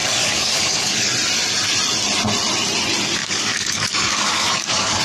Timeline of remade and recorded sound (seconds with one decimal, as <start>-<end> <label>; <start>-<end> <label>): 0.0-1.1 remade; 1.1-3.2 recorded; 3.2-5.0 remade